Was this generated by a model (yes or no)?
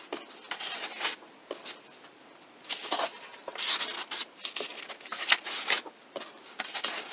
no